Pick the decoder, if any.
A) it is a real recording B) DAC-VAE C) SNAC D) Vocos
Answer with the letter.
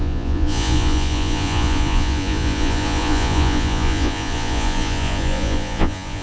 D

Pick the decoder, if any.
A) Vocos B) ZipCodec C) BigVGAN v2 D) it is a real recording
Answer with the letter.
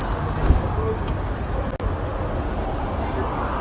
D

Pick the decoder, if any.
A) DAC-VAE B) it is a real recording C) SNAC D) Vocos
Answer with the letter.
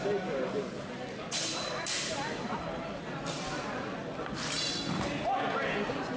B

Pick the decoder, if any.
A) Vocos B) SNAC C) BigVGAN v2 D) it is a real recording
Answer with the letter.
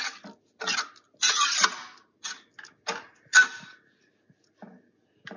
D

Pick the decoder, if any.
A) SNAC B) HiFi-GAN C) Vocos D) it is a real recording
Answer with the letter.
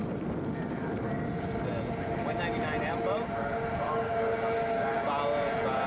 D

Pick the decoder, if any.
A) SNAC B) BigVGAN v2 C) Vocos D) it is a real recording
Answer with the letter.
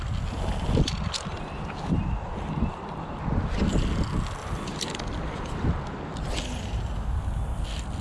D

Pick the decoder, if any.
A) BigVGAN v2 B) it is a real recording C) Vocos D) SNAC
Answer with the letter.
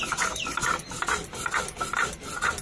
B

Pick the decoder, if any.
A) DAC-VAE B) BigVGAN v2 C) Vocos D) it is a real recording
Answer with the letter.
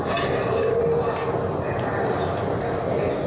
D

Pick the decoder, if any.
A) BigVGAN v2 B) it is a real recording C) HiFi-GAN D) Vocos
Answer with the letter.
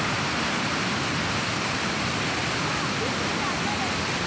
B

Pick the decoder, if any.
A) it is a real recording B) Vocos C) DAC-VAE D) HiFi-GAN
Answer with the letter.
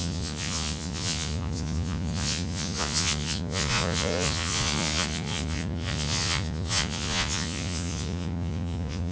B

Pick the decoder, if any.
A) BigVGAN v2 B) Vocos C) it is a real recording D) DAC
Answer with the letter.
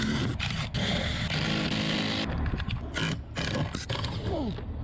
C